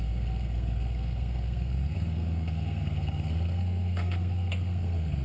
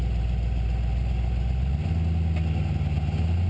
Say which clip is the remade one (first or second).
first